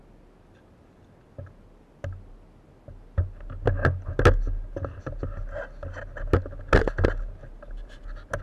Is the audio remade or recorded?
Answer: recorded